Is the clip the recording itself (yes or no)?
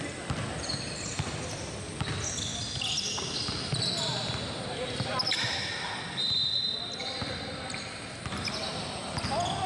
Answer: yes